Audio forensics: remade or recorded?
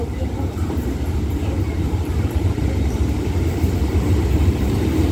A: remade